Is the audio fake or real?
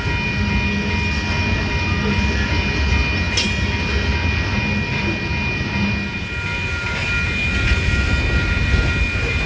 real